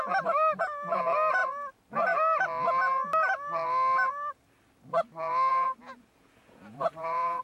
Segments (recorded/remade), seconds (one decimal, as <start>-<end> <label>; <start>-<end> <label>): 0.0-5.5 recorded; 5.5-7.4 remade